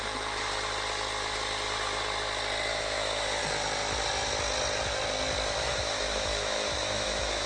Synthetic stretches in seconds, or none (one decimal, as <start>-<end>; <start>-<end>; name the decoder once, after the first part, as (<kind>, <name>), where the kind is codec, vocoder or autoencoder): 0.0-0.5 (autoencoder, DAC-VAE); 2.7-3.4; 5.7-7.5